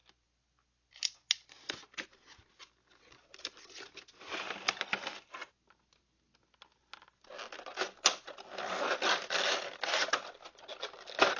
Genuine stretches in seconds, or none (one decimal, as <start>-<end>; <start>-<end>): 0.0-11.4